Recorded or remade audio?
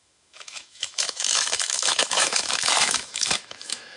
remade